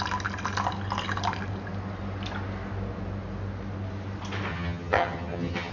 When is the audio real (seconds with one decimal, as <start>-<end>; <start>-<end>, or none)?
0.0-4.5